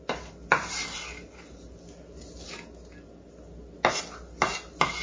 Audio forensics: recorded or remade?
recorded